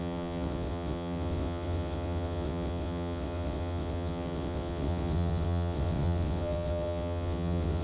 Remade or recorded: remade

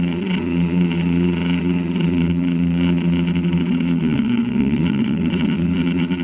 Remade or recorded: remade